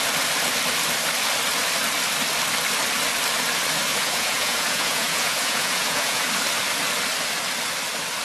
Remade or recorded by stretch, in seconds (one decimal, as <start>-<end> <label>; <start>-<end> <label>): 0.0-3.9 recorded; 3.9-6.3 remade; 6.3-8.2 recorded